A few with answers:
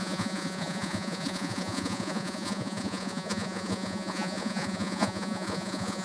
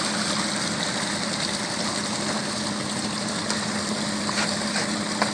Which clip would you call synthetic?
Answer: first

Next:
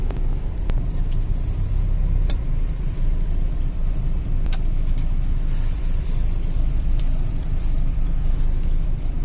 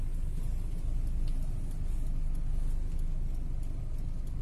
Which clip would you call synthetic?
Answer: first